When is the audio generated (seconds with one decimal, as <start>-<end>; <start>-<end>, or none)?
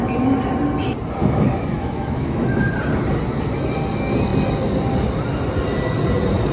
1.2-2.6